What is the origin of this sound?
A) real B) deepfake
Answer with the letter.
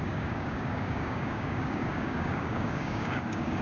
B